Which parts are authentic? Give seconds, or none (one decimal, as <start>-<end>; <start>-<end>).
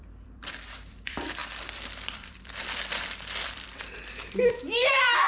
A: none